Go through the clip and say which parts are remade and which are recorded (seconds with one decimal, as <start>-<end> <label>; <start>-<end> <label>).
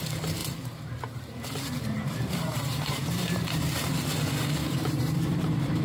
0.0-0.4 recorded; 0.4-3.9 remade; 3.9-4.6 recorded; 4.6-5.8 remade